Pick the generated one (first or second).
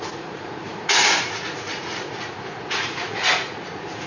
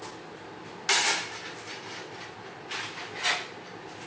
first